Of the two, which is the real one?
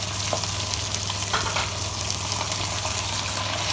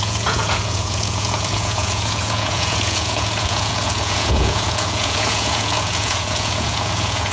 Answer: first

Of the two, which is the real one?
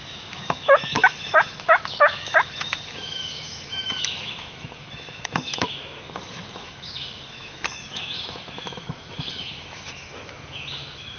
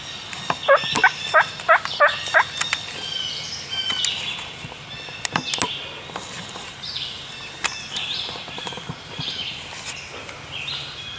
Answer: second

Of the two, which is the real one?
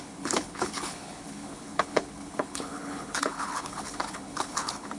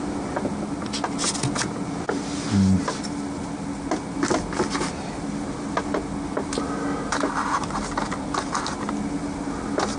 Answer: second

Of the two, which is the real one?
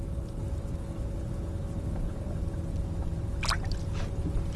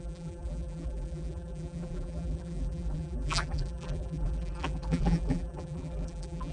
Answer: first